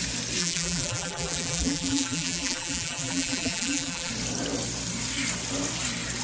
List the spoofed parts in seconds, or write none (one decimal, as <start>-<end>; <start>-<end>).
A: 0.4-4.1